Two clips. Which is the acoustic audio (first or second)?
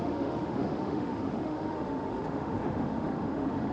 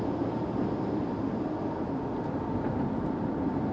second